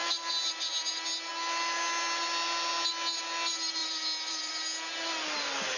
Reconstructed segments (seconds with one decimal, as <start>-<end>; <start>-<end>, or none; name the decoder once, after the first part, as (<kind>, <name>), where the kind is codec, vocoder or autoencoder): 3.8-4.5 (vocoder, BigVGAN v2)